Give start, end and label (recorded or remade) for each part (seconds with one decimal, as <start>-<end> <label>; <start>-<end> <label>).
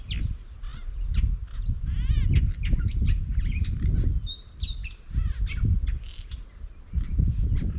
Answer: 0.0-7.8 recorded